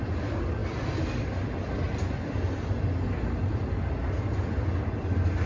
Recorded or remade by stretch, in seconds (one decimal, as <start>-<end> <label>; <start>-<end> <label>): 0.0-5.5 recorded